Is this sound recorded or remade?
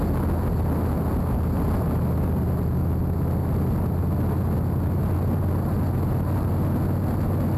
recorded